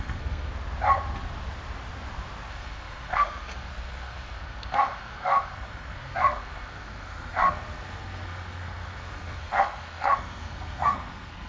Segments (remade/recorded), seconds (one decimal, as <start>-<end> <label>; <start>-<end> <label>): 0.0-0.5 remade; 0.5-2.5 recorded; 2.5-11.5 remade